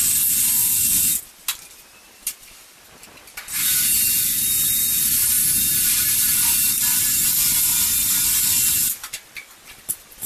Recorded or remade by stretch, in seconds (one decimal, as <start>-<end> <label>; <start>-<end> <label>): 0.0-10.3 recorded